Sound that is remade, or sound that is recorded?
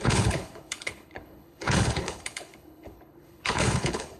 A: remade